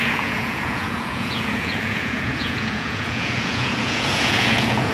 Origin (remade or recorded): remade